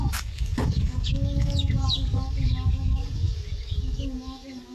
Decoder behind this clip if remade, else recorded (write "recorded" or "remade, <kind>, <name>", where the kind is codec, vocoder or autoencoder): remade, codec, DAC